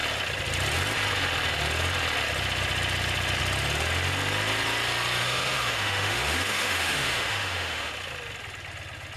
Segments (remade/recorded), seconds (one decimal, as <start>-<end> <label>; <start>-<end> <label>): 0.0-5.2 recorded; 5.2-7.9 remade; 7.9-9.2 recorded